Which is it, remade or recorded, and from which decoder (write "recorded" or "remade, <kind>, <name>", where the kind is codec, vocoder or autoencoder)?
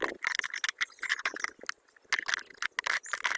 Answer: recorded